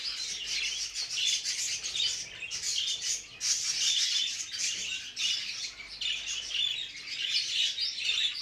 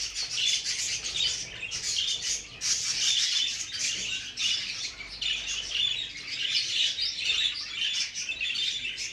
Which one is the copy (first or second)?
second